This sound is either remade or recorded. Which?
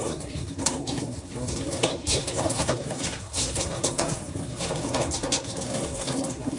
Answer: remade